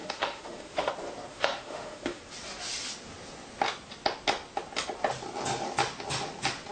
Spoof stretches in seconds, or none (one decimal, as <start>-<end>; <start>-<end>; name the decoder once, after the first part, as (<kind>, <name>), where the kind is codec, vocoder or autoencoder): 0.0-0.9 (autoencoder, DAC-VAE); 1.3-2.2